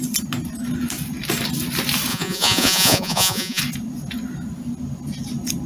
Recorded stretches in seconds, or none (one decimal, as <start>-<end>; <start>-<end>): 0.0-2.1; 3.6-5.7